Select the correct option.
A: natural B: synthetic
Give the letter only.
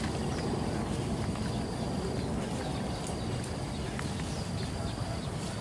A